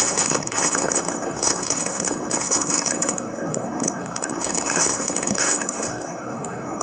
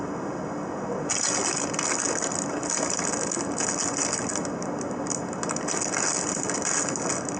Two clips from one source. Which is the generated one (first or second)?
first